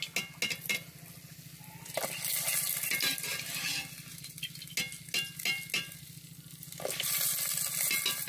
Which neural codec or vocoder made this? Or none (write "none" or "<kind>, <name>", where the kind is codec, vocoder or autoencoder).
none